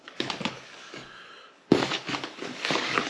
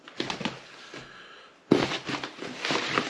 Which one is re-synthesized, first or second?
first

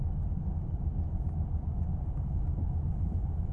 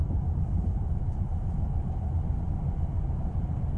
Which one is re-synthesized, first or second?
second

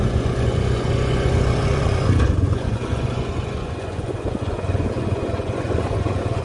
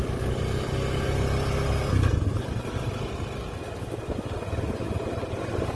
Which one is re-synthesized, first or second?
first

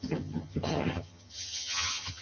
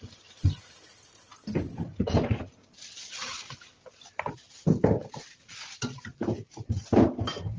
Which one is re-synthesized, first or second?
first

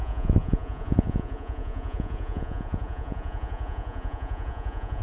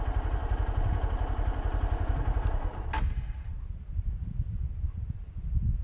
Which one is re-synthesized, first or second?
first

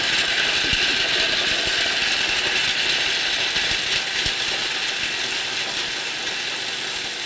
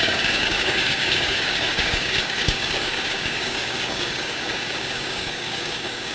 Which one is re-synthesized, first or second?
second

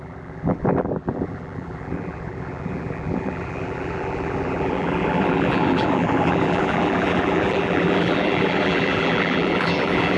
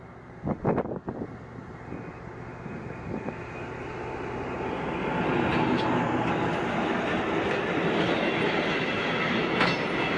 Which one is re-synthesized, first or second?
first